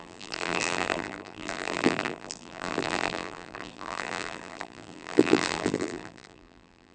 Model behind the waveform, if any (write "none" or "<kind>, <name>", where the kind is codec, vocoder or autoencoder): vocoder, BigVGAN v2